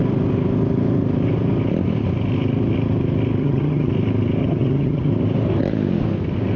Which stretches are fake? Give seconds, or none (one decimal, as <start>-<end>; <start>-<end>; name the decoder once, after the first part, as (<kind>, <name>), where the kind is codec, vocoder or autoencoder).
3.4-3.9 (vocoder, HiFi-GAN); 4.4-5.1